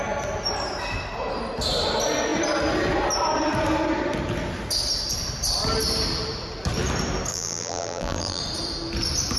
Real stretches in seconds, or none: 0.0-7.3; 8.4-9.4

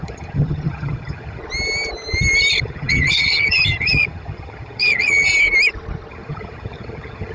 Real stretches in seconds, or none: 1.4-2.6; 5.3-6.1

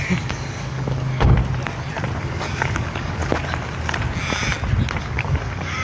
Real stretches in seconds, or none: 1.4-2.2; 3.2-5.0

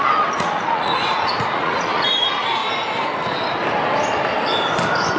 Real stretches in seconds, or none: 2.6-5.2

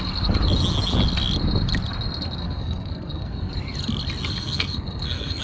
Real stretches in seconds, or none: 0.0-2.4; 3.5-4.3